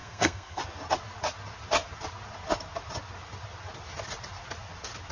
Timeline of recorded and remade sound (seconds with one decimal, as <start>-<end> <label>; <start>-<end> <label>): 0.0-0.6 remade; 0.6-5.1 recorded